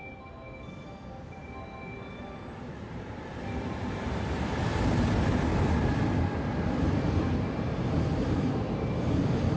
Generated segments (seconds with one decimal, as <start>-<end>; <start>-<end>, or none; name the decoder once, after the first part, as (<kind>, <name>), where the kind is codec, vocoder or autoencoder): 2.6-5.5 (vocoder, BigVGAN v2); 7.4-9.6

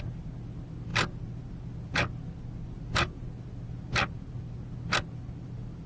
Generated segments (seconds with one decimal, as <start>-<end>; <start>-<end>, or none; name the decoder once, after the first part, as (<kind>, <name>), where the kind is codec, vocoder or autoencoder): none

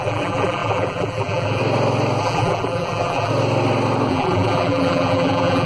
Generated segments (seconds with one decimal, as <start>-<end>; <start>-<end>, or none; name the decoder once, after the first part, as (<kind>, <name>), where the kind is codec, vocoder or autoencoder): 0.0-1.6 (vocoder, BigVGAN v2); 2.2-3.3; 4.1-5.7

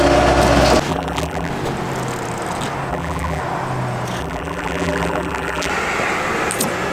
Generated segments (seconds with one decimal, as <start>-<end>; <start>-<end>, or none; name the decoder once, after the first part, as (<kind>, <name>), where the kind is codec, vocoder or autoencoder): 0.9-1.5 (vocoder, BigVGAN v2); 2.9-3.4; 4.2-5.7